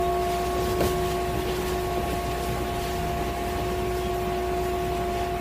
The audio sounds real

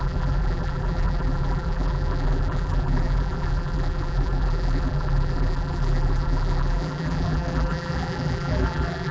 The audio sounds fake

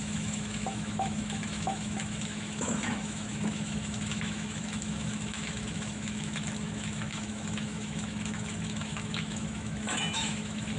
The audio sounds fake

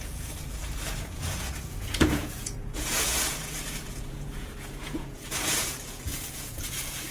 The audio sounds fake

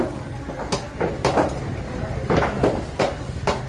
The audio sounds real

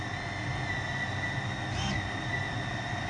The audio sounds real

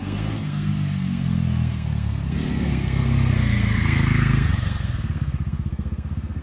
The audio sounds fake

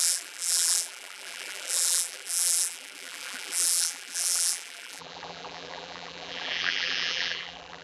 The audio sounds fake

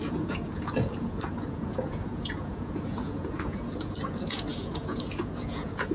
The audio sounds fake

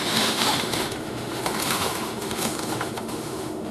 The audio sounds fake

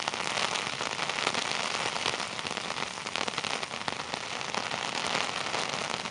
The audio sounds real